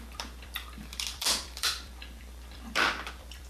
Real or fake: fake